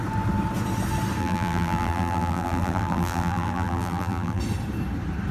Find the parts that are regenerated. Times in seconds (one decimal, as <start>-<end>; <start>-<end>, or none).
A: 1.2-4.4